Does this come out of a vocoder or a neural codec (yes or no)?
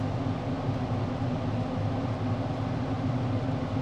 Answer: no